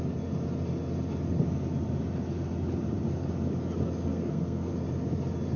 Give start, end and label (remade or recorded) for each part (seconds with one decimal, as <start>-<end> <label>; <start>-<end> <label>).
0.0-4.1 recorded; 4.1-4.7 remade; 4.7-5.6 recorded